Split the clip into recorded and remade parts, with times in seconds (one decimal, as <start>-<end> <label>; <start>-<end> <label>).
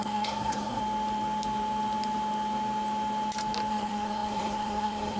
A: 0.0-0.8 remade; 0.8-3.7 recorded; 3.7-5.2 remade